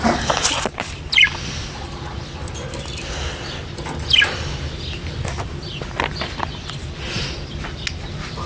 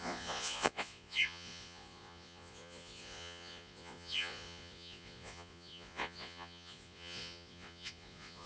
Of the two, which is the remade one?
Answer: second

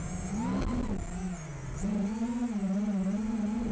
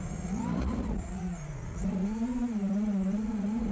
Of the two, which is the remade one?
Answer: second